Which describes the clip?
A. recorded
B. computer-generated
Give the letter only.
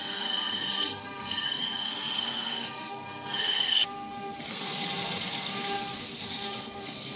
B